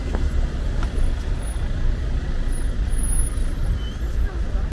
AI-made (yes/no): no